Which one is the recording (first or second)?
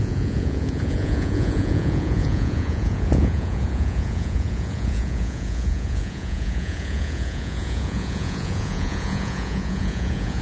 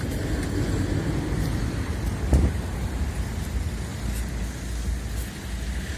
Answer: second